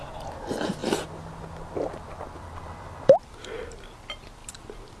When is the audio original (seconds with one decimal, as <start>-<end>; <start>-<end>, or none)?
0.0-5.0